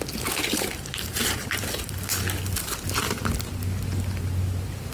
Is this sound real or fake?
real